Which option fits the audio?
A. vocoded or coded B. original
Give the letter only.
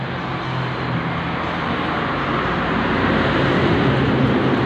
B